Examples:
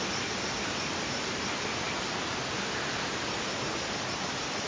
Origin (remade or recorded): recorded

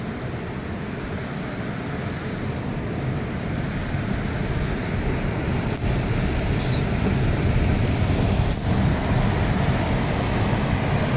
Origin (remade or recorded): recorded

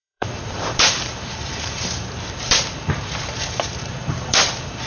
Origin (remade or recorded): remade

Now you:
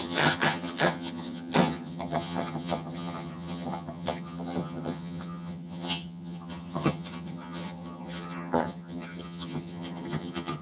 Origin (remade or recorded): remade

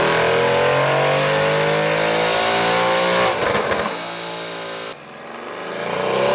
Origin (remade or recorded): recorded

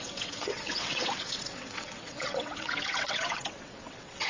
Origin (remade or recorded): remade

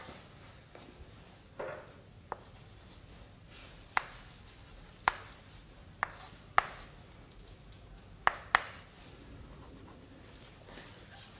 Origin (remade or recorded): recorded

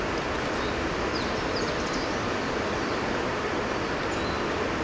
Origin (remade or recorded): recorded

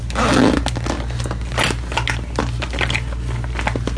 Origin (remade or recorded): recorded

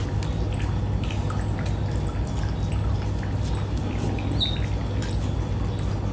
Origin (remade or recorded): recorded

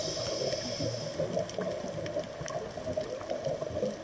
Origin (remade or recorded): recorded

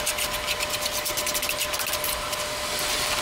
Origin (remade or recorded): recorded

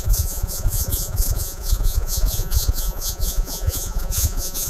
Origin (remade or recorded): remade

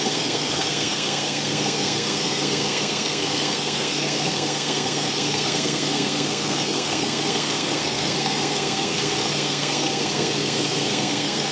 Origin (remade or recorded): remade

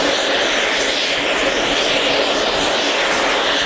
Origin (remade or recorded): recorded